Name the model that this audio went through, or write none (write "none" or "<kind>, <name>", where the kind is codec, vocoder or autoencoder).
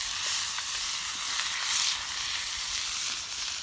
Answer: vocoder, BigVGAN v2